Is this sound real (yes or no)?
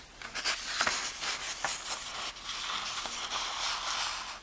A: yes